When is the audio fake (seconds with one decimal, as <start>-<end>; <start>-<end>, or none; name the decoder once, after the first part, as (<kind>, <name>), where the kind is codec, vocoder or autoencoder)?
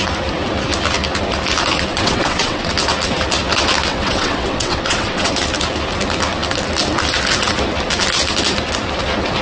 1.9-2.7 (vocoder, WaveNeXt); 3.9-5.3